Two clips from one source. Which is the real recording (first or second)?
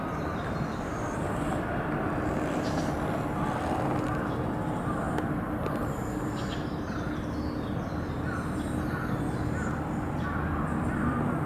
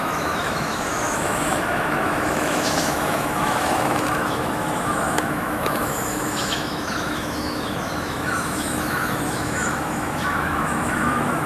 first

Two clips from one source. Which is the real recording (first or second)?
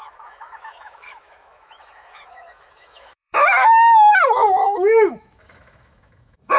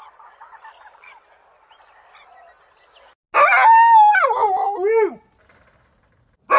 second